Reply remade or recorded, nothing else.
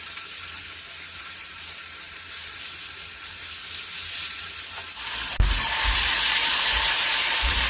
remade